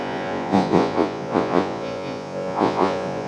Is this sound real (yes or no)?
no